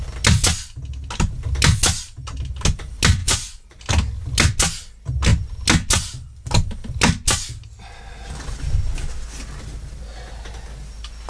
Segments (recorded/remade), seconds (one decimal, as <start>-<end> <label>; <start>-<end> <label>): 0.0-3.2 recorded; 3.2-3.8 remade; 3.8-11.3 recorded